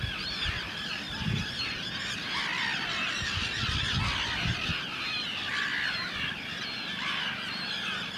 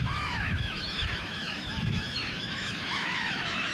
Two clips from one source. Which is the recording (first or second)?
first